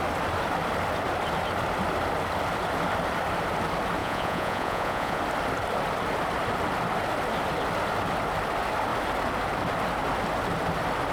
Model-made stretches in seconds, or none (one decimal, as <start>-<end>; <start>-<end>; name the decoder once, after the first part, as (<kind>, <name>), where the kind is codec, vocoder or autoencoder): 4.0-5.2 (vocoder, Vocos)